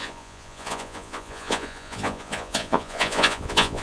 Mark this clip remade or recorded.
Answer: remade